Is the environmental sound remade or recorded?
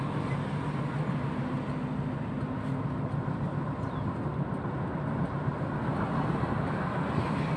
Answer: recorded